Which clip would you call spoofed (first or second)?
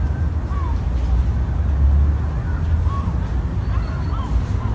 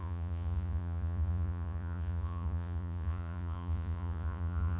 second